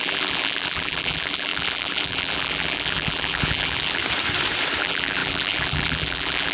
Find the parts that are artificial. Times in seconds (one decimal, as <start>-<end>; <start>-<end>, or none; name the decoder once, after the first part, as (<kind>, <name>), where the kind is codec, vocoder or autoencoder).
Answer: 0.0-4.0 (vocoder, BigVGAN v2); 4.8-6.5